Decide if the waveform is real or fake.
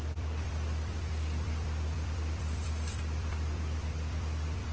fake